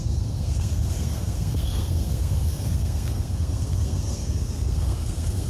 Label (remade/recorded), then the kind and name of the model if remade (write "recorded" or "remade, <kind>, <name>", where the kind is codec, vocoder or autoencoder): remade, codec, SNAC